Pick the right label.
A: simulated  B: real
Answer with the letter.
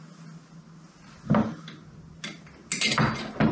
B